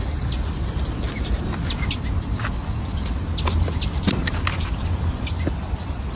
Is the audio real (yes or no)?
yes